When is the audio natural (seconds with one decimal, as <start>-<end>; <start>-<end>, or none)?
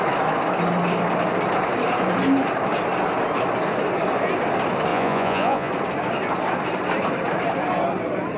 0.0-4.9; 5.7-8.4